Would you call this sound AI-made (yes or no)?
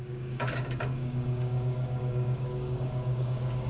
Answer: yes